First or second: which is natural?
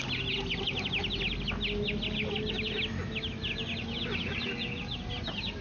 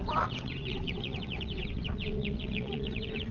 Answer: first